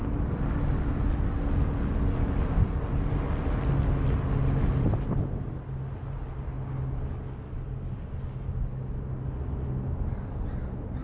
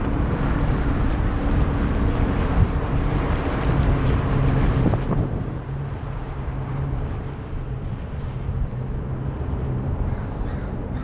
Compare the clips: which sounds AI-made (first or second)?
second